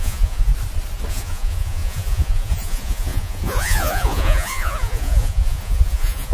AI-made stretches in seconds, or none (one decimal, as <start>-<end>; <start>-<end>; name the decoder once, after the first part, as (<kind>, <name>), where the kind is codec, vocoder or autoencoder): 0.0-0.5 (vocoder, Vocos); 1.1-6.3